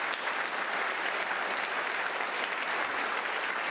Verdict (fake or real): real